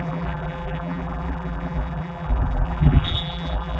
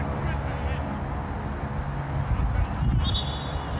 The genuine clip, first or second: second